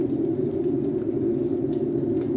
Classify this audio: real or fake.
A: real